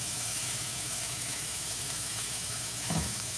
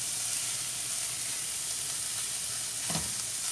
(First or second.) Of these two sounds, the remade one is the first